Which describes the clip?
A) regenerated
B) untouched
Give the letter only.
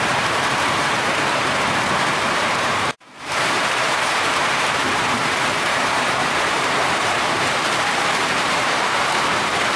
A